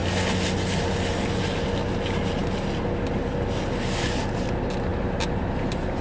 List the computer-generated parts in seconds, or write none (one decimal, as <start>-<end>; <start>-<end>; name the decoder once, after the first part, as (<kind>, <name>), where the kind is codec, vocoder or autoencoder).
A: none